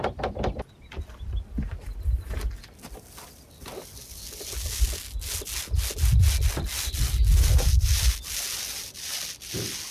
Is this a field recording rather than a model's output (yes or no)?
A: yes